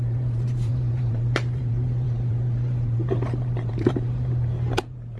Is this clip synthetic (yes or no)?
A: yes